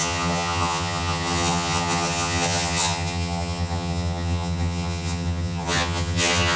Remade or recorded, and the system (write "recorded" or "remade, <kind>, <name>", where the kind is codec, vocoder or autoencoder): remade, vocoder, HiFi-GAN